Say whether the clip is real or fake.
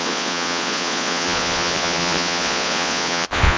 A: fake